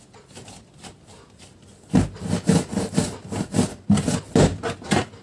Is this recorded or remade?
recorded